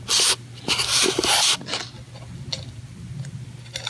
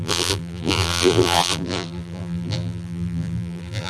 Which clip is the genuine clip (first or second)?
first